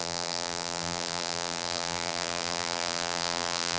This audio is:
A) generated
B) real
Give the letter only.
A